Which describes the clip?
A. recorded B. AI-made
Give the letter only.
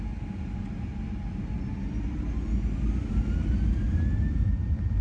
A